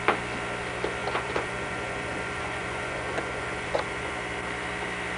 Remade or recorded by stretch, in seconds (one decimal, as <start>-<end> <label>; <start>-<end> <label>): 0.0-1.0 recorded; 1.0-4.1 remade; 4.1-5.2 recorded